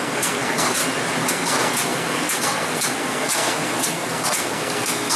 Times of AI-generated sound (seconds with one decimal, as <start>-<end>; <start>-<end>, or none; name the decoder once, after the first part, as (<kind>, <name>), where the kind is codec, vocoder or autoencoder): 0.0-0.8 (codec, SNAC); 1.3-5.2